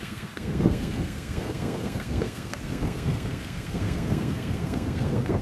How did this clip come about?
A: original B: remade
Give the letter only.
B